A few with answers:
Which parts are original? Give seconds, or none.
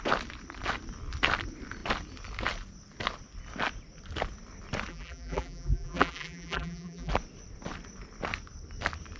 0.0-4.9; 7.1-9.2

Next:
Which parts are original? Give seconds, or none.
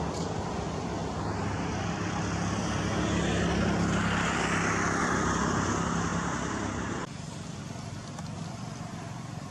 1.0-5.0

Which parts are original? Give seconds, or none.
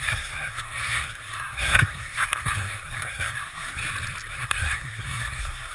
3.8-4.3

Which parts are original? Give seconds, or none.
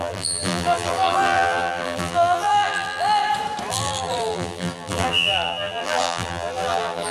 3.2-3.7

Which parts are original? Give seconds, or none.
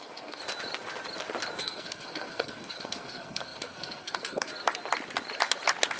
0.4-1.6; 4.5-6.0